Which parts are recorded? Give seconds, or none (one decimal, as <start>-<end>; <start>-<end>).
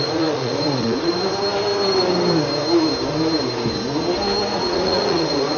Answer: 1.1-4.5